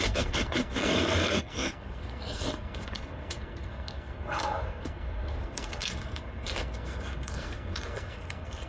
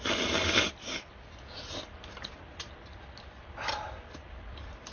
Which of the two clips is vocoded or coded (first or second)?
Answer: first